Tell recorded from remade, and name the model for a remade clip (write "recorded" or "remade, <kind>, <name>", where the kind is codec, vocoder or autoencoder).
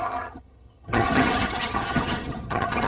remade, vocoder, HiFi-GAN